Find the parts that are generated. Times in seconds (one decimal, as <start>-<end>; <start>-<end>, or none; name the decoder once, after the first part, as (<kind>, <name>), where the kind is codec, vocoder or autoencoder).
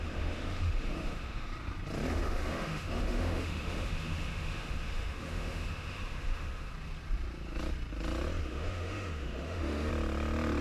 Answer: 0.0-1.5 (autoencoder, DAC-VAE); 2.1-6.7; 8.4-9.9